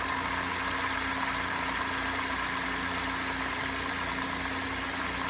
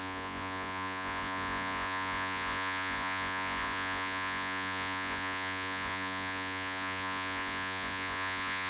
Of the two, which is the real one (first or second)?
first